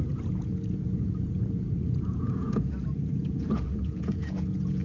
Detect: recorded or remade remade